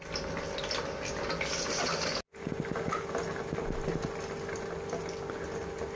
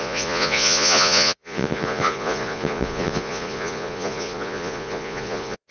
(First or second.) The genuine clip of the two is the first